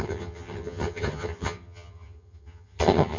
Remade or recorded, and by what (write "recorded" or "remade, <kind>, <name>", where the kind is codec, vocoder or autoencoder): remade, vocoder, HiFi-GAN